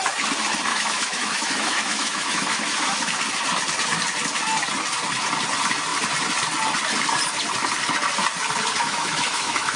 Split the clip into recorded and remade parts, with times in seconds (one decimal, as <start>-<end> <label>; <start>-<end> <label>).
0.0-0.7 recorded; 0.7-3.2 remade; 3.2-8.8 recorded; 8.8-9.8 remade